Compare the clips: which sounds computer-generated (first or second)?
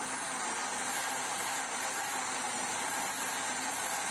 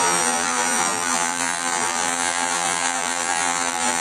second